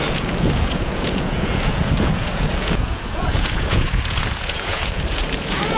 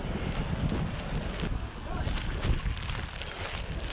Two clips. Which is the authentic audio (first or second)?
second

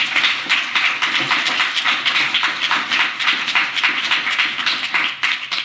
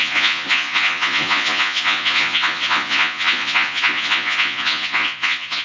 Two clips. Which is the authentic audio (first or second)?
first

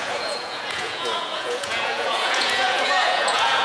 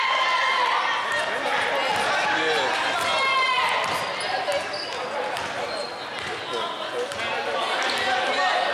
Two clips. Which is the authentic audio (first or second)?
second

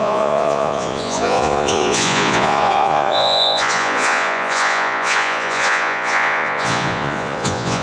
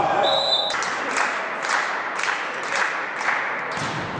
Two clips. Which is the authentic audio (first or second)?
second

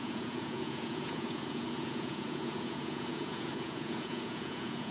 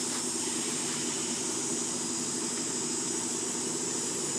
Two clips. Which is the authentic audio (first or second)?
second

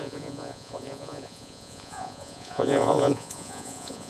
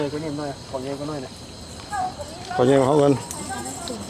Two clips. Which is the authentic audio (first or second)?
second